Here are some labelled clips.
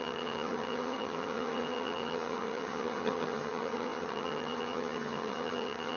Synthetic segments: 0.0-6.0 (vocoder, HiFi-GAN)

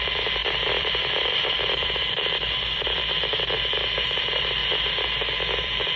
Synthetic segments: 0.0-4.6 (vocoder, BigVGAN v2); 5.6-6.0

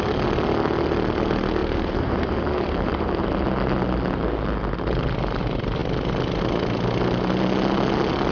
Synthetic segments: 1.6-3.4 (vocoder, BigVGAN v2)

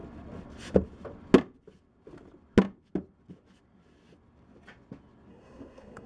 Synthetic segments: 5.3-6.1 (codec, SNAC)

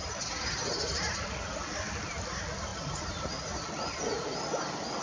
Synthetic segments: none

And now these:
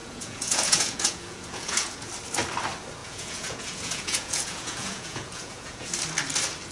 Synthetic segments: 0.0-2.1 (vocoder, Vocos); 3.0-5.9

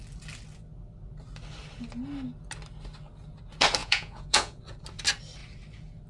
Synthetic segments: 3.8-4.6 (vocoder, Vocos)